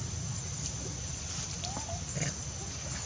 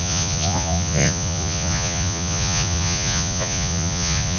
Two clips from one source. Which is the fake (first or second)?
second